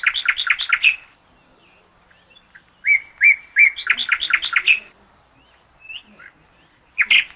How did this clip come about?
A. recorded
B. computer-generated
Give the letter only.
A